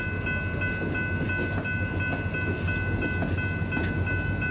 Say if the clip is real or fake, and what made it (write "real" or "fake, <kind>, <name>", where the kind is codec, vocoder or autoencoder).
real